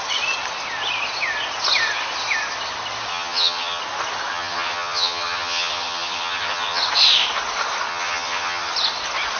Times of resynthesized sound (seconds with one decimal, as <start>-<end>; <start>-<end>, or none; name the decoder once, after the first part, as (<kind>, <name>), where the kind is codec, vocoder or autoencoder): 3.1-3.8 (vocoder, HiFi-GAN); 4.3-6.8; 7.9-8.7